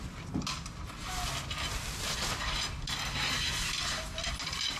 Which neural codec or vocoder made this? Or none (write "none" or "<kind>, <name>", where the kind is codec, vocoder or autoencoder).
none